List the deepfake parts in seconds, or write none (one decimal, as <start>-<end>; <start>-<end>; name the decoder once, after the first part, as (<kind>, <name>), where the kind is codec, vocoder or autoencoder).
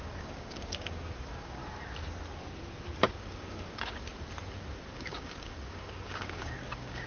0.0-1.6 (codec, DAC); 3.2-4.1; 4.9-7.1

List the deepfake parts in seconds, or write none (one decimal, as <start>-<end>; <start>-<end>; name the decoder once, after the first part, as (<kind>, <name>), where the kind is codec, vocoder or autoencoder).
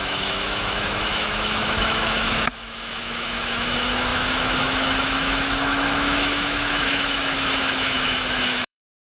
0.0-9.1 (autoencoder, DAC-VAE)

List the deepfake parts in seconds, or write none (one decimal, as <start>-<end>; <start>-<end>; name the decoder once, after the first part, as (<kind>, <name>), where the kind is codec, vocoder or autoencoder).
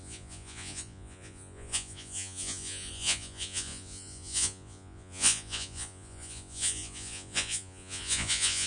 0.0-8.7 (vocoder, Vocos)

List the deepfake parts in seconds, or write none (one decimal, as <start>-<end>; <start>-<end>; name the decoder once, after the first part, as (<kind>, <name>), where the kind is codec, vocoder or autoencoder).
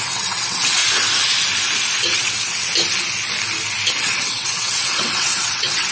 0.0-0.8 (vocoder, WaveNeXt); 2.0-2.7; 4.0-5.9